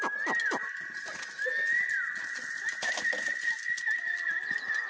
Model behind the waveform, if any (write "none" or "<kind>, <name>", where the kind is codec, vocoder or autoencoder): none